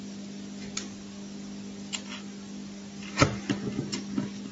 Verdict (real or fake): real